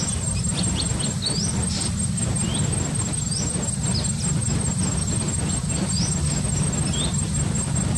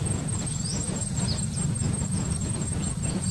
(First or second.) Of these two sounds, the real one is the first